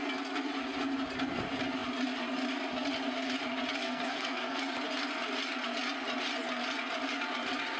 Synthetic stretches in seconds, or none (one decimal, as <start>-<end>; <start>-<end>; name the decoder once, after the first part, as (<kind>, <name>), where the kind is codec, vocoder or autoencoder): 3.8-4.6 (codec, SNAC)